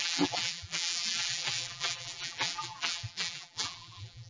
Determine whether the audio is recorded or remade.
remade